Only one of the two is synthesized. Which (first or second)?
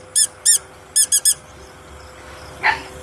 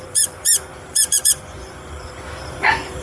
second